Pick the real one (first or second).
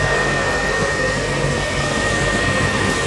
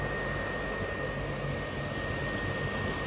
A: second